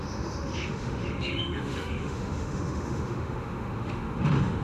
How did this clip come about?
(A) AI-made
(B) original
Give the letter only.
A